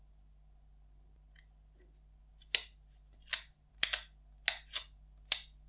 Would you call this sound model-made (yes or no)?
no